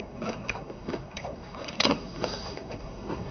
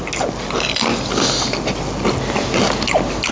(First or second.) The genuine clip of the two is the second